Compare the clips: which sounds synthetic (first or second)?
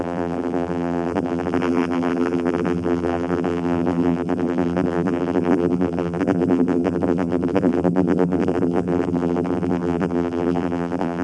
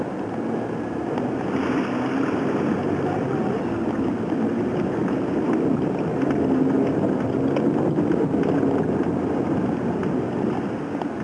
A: first